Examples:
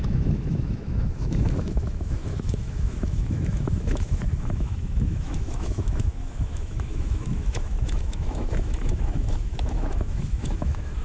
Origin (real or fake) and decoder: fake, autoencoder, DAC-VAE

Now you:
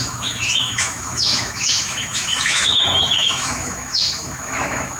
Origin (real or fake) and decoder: fake, autoencoder, DAC-VAE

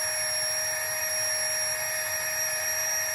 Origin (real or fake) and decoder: real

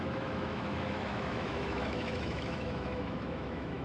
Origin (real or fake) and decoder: fake, autoencoder, DAC-VAE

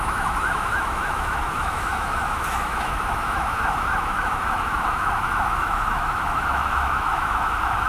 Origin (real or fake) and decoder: fake, autoencoder, DAC-VAE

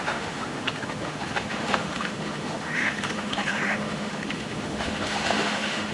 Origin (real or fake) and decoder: fake, autoencoder, DAC-VAE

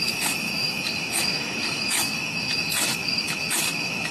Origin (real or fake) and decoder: fake, autoencoder, DAC-VAE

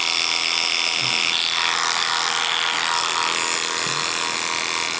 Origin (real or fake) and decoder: real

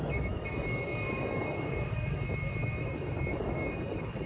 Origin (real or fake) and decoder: fake, autoencoder, DAC-VAE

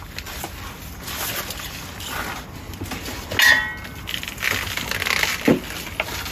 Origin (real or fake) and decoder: real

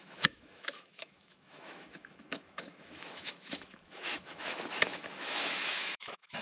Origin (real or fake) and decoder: fake, autoencoder, DAC-VAE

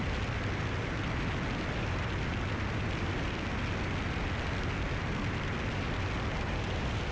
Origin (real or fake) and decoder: real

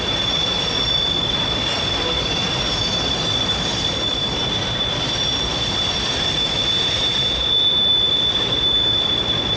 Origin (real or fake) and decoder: real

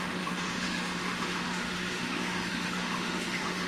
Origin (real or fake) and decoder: fake, autoencoder, DAC-VAE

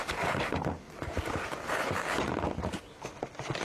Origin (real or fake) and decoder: real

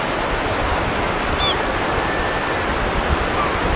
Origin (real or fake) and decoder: real